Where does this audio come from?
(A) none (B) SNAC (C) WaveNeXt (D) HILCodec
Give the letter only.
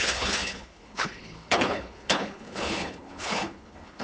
D